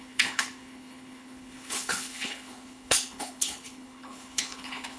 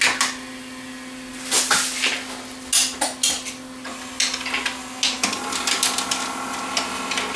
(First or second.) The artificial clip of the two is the first